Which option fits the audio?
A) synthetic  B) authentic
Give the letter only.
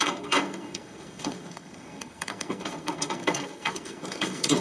A